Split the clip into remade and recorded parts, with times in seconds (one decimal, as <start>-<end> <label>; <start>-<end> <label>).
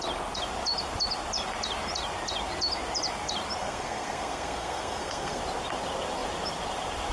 0.0-3.6 recorded; 3.6-5.4 remade; 5.4-7.1 recorded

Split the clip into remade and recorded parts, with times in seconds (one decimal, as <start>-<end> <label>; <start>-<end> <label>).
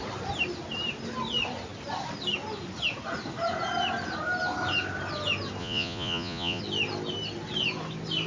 0.0-5.6 recorded; 5.6-6.6 remade; 6.6-8.3 recorded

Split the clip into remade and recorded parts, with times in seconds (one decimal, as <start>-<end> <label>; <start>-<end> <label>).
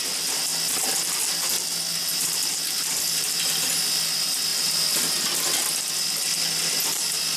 0.0-2.0 recorded; 2.0-3.5 remade; 3.5-7.4 recorded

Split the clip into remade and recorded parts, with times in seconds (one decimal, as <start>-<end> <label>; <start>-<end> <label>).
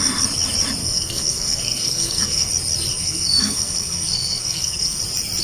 0.0-0.8 recorded; 0.8-2.5 remade; 2.5-2.9 recorded; 2.9-5.0 remade; 5.0-5.4 recorded